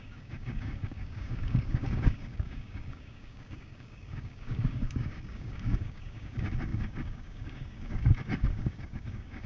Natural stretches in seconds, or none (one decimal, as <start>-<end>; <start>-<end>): none